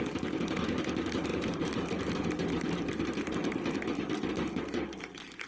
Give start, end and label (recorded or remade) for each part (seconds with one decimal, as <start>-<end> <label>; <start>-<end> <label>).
0.0-1.3 recorded; 1.3-4.6 remade; 4.6-5.5 recorded